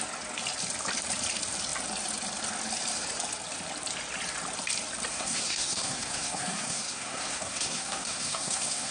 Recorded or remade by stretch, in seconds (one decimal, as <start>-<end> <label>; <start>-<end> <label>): 0.0-5.1 recorded; 5.1-8.9 remade